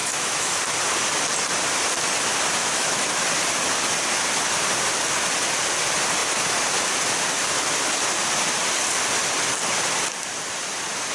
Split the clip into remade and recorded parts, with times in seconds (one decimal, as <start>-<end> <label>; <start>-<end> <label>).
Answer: 0.0-0.6 remade; 0.6-2.6 recorded; 2.6-3.2 remade; 3.2-11.1 recorded